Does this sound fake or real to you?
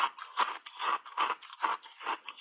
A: real